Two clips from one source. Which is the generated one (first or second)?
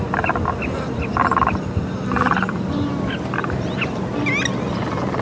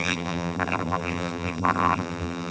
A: second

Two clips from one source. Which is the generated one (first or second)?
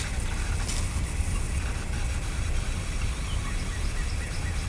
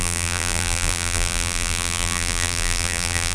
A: second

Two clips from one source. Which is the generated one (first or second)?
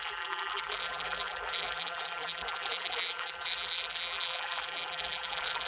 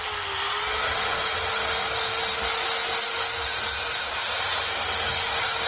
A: first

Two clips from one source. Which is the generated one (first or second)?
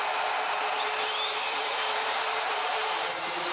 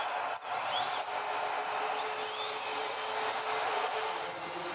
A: first